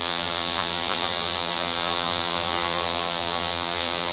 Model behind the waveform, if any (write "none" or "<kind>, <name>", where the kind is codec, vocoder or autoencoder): vocoder, BigVGAN v2